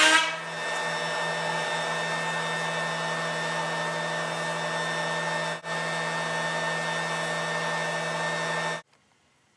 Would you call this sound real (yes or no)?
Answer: yes